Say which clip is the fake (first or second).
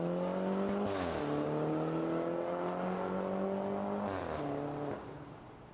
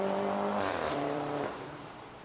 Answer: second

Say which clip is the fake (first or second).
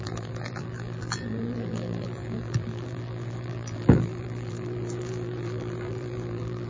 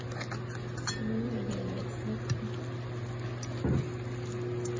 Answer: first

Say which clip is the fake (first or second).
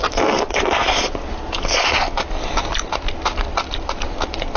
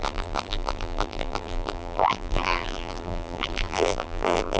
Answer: second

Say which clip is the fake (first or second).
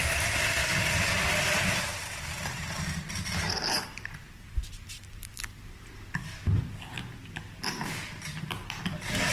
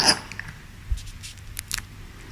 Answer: first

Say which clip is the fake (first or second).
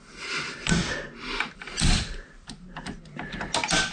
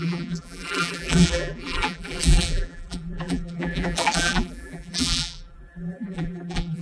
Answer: second